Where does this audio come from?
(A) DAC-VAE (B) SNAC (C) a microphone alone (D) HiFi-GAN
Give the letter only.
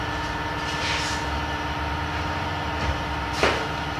C